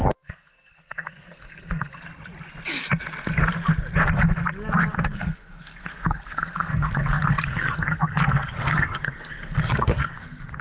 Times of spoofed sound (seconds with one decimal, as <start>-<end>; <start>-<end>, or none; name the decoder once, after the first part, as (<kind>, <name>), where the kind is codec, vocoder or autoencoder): 0.0-1.9 (codec, SNAC); 4.9-10.6